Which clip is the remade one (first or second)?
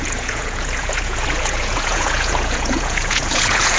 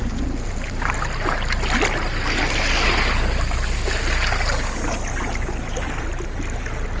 first